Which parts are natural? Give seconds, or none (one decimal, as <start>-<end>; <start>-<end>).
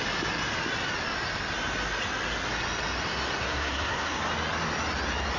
0.0-3.4; 4.2-5.4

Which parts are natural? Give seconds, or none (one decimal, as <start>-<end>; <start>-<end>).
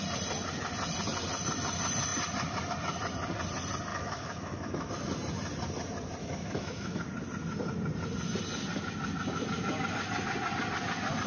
0.0-3.9; 4.9-6.2; 7.0-11.3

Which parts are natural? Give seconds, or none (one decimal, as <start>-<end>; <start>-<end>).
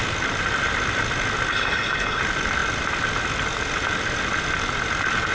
0.0-1.5; 2.2-5.3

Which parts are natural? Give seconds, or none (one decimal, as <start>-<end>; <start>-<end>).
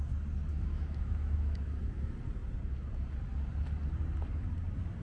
0.0-0.5; 2.0-5.0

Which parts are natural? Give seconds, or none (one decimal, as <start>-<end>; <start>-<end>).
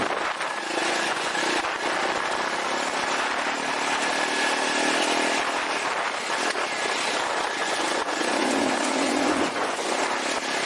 0.0-0.8; 1.4-7.6; 10.0-10.7